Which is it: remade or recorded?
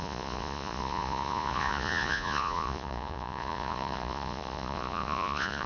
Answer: remade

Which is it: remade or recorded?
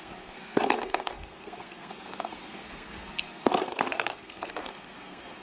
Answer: remade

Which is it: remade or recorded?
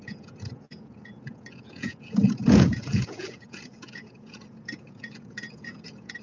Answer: remade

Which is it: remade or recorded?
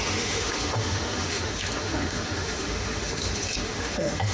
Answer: remade